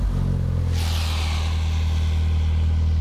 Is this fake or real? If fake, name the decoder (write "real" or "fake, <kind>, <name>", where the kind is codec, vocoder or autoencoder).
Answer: real